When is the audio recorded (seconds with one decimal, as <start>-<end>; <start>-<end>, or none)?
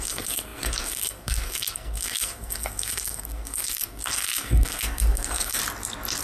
5.6-6.2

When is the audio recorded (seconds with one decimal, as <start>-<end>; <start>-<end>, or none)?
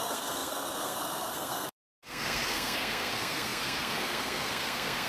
none